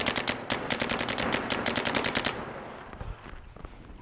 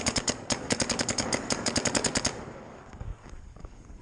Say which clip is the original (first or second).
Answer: first